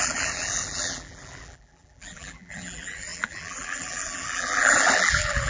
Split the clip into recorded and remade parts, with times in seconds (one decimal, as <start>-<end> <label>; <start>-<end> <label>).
0.0-5.5 remade